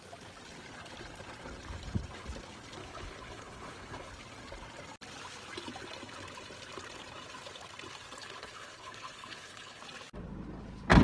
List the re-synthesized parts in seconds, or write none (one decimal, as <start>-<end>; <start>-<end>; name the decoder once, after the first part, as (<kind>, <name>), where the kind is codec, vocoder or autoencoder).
2.8-4.1 (codec, HILCodec); 8.2-9.8